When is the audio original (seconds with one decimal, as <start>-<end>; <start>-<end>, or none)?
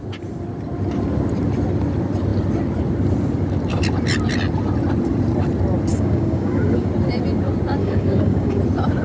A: 0.0-5.9; 6.9-7.8; 8.6-9.0